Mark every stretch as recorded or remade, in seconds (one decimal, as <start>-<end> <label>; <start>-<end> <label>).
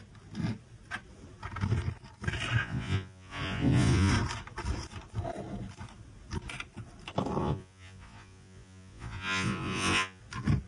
0.0-2.6 recorded; 2.6-4.1 remade; 4.1-7.4 recorded; 7.4-10.2 remade; 10.2-10.7 recorded